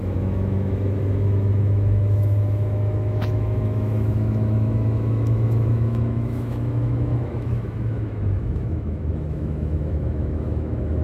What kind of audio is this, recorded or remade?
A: remade